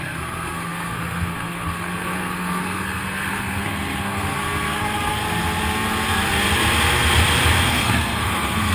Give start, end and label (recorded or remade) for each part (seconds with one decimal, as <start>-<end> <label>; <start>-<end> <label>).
0.0-5.2 remade; 5.2-7.7 recorded; 7.7-8.7 remade